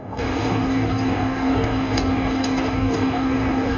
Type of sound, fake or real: fake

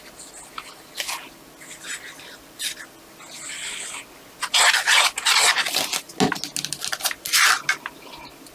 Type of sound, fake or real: real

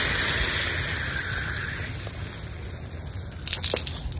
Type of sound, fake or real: real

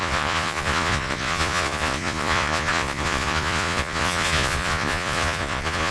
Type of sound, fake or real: fake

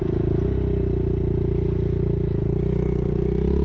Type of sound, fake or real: real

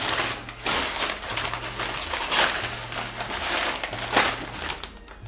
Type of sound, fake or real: real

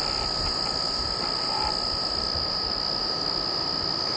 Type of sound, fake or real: real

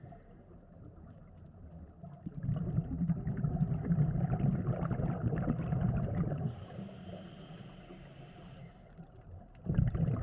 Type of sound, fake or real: real